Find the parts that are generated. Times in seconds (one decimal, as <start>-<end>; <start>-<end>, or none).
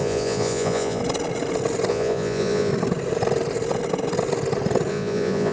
0.0-1.0; 1.9-2.7; 4.9-5.5